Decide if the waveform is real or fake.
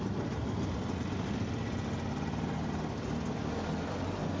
real